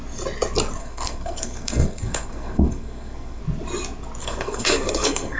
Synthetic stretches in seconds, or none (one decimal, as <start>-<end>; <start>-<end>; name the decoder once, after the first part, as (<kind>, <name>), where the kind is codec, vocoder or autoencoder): 0.8-3.4 (codec, SNAC); 4.2-5.4